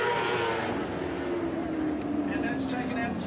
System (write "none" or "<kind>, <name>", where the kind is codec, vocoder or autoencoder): none